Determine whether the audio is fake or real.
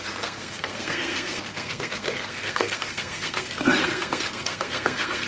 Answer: fake